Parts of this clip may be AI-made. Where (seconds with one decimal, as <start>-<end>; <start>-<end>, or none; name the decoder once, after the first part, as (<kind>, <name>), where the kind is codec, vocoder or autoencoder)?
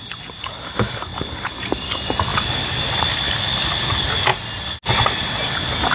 none